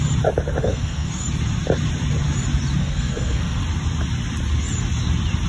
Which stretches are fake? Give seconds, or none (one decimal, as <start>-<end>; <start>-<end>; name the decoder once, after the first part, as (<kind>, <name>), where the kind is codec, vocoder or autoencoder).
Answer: 0.6-1.1 (codec, SNAC); 2.8-3.6